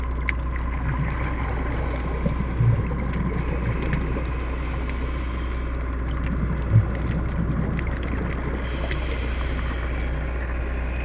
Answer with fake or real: real